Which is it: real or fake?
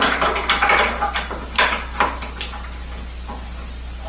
real